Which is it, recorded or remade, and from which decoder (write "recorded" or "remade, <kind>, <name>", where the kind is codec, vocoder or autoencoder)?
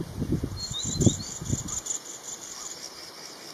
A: recorded